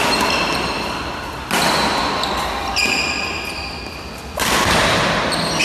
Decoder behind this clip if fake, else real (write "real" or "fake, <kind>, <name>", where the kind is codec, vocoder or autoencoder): real